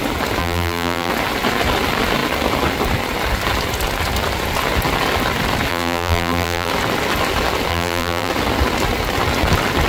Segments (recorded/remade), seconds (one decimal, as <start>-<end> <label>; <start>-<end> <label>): 0.0-0.4 recorded; 0.4-1.1 remade; 1.1-5.7 recorded; 5.7-6.7 remade; 6.7-7.7 recorded; 7.7-8.3 remade; 8.3-9.9 recorded